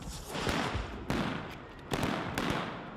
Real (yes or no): yes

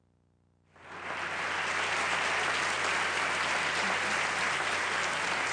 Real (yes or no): yes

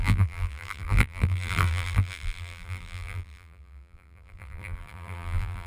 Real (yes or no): no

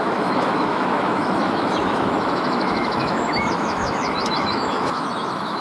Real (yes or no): no